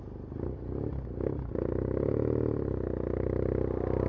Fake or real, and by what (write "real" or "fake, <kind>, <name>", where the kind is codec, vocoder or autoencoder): real